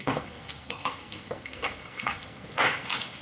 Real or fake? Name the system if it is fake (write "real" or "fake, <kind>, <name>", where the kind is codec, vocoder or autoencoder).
fake, codec, SNAC